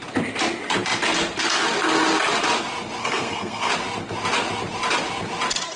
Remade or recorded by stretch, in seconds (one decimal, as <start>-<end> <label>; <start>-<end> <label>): 0.0-3.0 recorded; 3.0-3.7 remade; 3.7-5.8 recorded